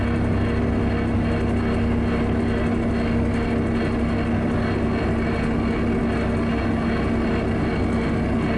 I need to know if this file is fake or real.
real